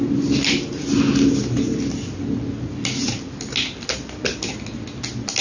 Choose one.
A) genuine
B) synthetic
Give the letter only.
A